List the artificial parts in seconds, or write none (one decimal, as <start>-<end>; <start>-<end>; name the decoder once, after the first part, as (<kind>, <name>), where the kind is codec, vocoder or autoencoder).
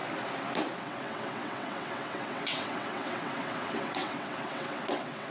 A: 0.8-5.3 (vocoder, WaveNeXt)